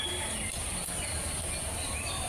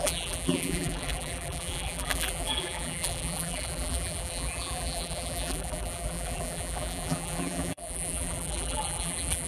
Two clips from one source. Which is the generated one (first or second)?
second